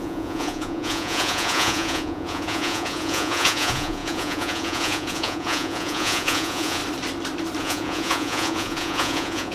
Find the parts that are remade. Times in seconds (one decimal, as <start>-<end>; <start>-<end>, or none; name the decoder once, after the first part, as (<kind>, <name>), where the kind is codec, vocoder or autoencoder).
0.0-6.8 (vocoder, Vocos); 7.6-9.5